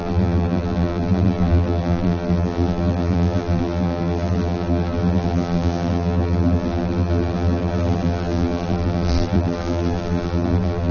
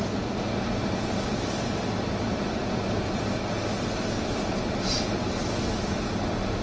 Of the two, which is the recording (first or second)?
second